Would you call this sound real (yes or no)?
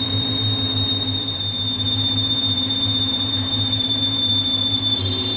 no